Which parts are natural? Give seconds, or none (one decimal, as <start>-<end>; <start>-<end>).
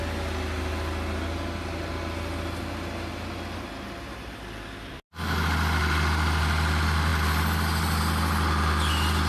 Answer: 0.0-9.3